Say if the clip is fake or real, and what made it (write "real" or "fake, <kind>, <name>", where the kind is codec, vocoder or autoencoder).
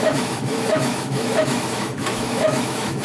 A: fake, autoencoder, DAC-VAE